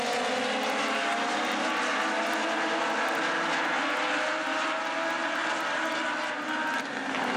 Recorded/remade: recorded